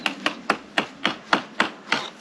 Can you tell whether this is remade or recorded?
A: recorded